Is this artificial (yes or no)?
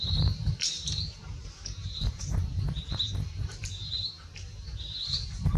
yes